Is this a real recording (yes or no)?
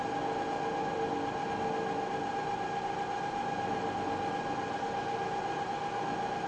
yes